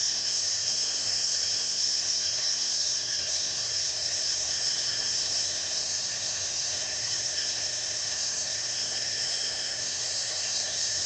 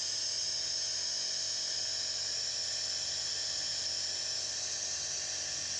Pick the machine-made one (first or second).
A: first